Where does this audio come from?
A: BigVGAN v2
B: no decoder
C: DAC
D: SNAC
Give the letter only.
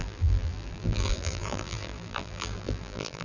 A